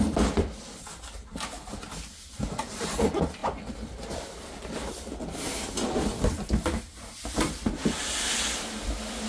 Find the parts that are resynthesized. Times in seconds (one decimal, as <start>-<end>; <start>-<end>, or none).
none